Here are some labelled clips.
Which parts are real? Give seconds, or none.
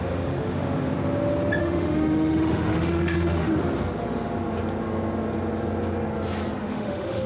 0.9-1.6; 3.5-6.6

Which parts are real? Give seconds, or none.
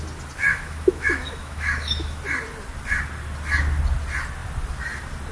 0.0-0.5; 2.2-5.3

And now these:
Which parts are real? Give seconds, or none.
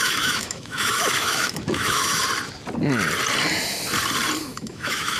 2.2-4.4